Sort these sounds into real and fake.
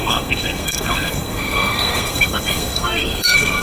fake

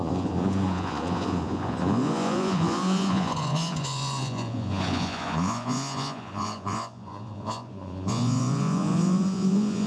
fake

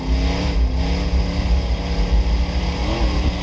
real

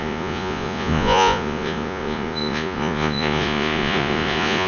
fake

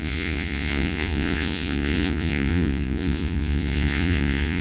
fake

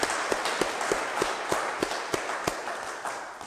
real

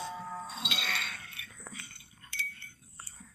fake